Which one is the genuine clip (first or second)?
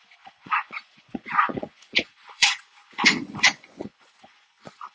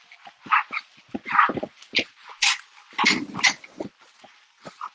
second